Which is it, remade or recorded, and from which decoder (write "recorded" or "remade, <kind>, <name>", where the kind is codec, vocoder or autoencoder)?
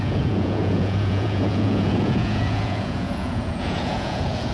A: remade, vocoder, Vocos